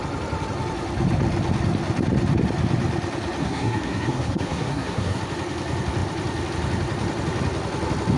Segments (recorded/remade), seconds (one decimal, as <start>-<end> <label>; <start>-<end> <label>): 0.0-3.4 recorded; 3.4-5.2 remade; 5.2-8.2 recorded